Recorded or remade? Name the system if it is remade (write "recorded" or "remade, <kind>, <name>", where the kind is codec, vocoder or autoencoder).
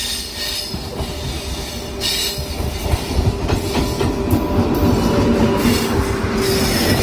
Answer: recorded